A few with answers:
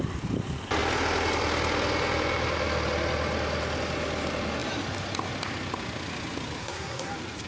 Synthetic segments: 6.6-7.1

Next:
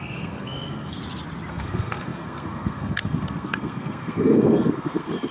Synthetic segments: 0.0-1.0; 1.5-5.3

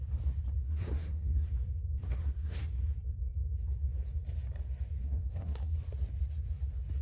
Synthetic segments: 0.6-1.5; 2.0-2.6; 5.0-5.7

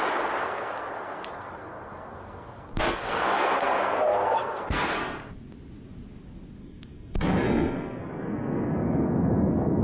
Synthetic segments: 0.4-5.3; 6.6-9.8